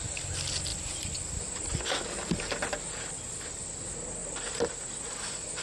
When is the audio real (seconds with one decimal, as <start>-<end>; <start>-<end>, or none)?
0.0-0.7; 1.6-4.2